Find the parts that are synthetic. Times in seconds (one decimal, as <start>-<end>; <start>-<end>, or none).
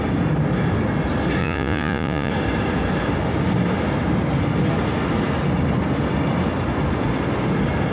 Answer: 1.4-2.3